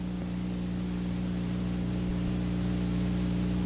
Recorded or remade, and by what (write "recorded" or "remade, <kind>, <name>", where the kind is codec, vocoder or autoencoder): recorded